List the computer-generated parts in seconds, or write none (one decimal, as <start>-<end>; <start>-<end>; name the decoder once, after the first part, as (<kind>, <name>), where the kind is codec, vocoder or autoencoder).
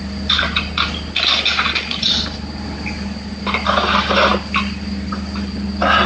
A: none